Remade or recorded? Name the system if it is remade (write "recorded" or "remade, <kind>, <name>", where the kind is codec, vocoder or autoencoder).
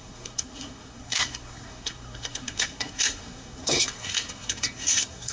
remade, codec, SNAC